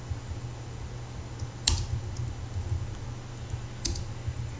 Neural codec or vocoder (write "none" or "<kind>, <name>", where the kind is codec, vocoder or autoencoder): none